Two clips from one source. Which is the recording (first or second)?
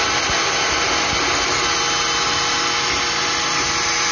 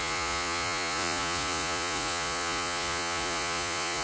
first